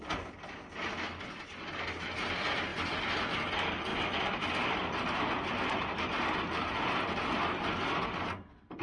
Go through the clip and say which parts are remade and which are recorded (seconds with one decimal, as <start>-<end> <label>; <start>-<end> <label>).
0.0-8.8 recorded